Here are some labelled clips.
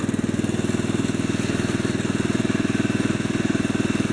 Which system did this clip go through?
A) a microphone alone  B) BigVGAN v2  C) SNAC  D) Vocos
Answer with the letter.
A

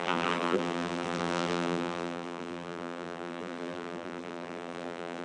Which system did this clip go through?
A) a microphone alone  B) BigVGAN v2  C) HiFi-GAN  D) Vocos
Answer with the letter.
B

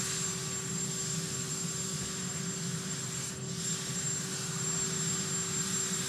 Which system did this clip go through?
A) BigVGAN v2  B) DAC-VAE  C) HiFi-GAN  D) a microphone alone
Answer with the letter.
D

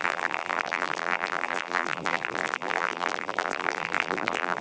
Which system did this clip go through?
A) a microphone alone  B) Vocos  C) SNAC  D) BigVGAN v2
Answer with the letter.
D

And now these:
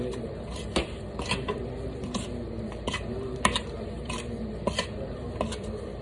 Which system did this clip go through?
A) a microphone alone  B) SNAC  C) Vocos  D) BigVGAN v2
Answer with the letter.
D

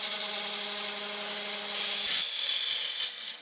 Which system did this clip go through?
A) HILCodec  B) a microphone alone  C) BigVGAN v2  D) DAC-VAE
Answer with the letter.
B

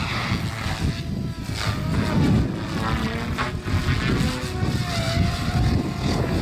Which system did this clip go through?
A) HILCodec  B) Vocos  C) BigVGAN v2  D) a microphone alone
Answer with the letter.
D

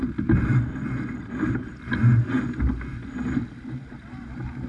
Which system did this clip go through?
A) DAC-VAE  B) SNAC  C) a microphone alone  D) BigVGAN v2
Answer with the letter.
C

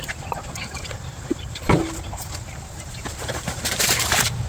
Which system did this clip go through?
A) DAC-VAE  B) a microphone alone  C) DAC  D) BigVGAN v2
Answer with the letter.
D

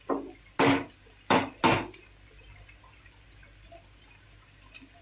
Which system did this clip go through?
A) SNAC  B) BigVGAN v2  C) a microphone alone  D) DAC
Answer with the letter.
C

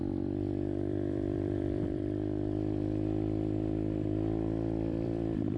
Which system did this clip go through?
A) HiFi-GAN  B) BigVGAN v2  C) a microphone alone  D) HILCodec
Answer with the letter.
B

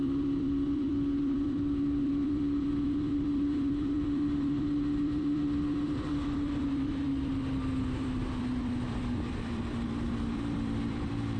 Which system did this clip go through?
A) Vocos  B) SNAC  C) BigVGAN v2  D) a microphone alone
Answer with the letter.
C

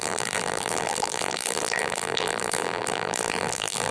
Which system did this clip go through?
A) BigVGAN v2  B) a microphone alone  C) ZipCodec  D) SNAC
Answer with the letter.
A